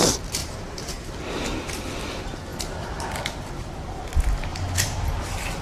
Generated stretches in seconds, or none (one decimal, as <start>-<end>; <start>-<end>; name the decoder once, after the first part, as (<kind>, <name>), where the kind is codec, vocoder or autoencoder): 0.4-0.9 (vocoder, BigVGAN v2); 2.5-3.2; 4.5-5.6